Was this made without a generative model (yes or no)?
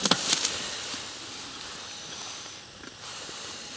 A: yes